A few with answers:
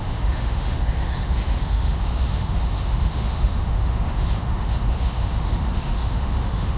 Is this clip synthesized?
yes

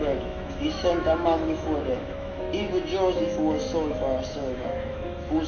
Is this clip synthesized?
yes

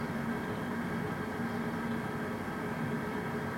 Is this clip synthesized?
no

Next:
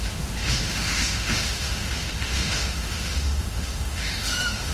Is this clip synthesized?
yes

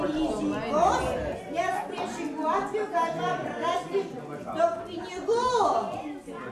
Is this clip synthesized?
no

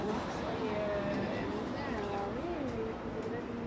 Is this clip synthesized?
no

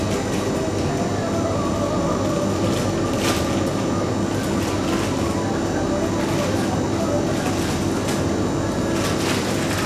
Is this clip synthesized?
no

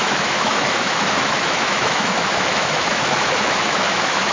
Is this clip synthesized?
yes